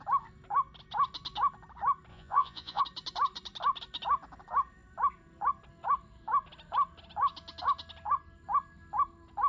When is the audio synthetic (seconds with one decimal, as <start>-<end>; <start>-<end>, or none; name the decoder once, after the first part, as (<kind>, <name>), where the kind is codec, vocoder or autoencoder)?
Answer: 2.1-2.8 (vocoder, Vocos)